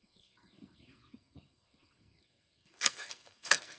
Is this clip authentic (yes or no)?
no